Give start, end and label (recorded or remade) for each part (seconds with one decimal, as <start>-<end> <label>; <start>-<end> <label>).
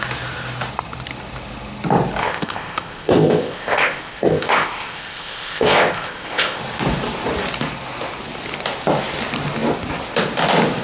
0.0-2.2 recorded; 2.2-6.6 remade; 6.6-10.8 recorded